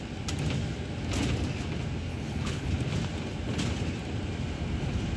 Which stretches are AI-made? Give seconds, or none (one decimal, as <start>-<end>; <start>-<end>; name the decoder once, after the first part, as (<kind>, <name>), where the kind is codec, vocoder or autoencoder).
2.1-2.7 (codec, HILCodec)